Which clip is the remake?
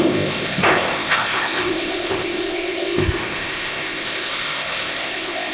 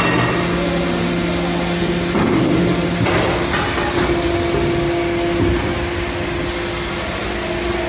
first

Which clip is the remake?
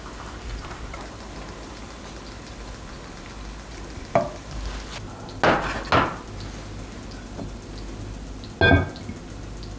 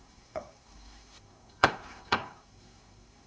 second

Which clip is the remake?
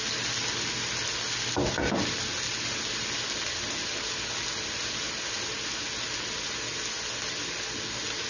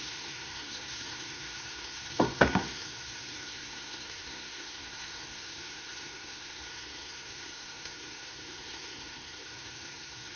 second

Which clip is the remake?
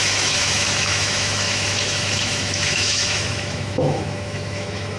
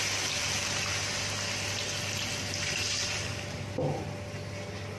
first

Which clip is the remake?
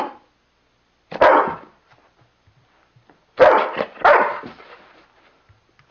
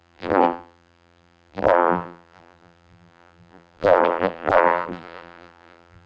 second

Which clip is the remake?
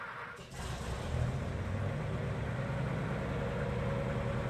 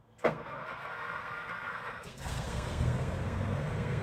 second